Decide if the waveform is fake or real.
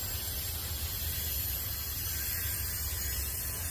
real